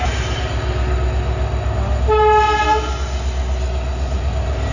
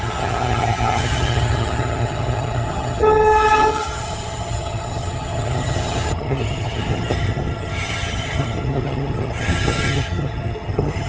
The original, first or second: first